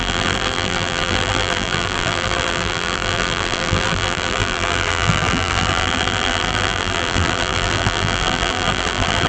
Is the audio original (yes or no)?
no